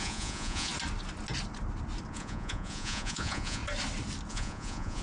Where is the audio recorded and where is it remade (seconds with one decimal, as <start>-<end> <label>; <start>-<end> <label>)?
0.0-0.7 remade; 0.7-2.1 recorded; 2.1-3.6 remade; 3.6-4.3 recorded; 4.3-5.0 remade